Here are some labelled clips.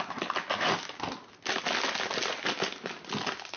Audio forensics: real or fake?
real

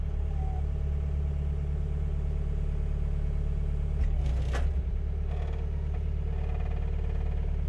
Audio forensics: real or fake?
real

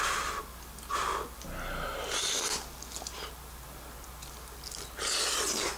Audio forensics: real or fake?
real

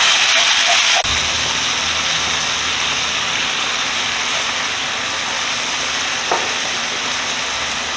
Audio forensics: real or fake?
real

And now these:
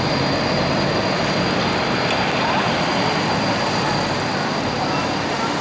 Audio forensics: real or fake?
real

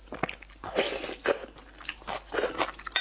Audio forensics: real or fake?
real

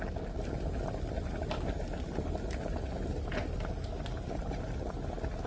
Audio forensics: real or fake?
real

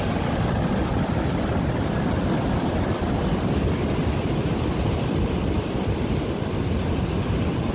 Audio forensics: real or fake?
real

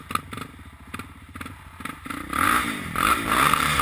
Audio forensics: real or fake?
fake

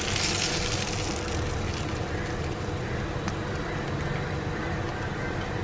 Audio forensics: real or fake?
real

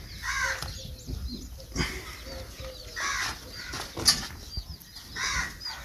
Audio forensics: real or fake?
real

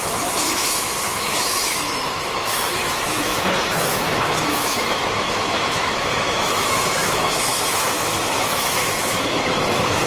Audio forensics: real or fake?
fake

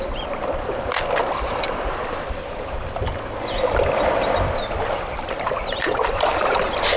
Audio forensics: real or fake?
fake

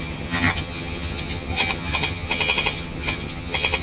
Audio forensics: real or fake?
fake